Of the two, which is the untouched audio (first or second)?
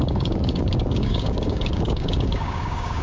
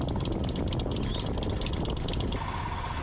second